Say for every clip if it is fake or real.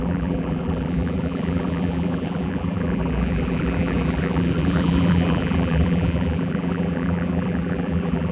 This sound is fake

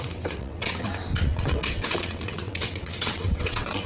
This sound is fake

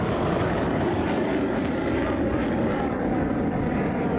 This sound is fake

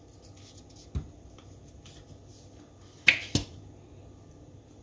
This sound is real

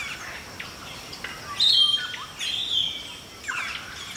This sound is real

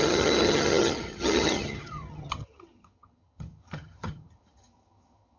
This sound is fake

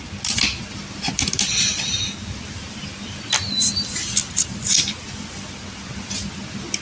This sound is real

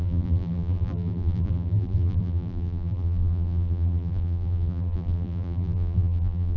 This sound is fake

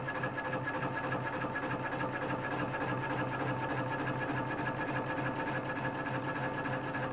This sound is real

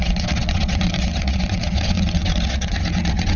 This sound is fake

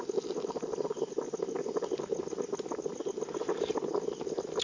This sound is real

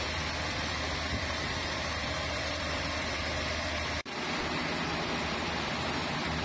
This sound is fake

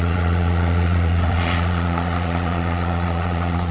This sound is fake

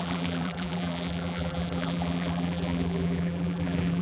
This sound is fake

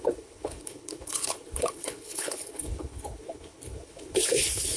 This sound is fake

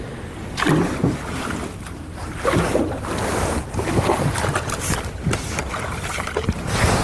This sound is real